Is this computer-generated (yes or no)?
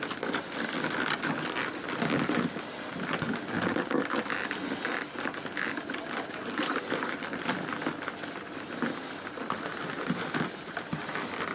no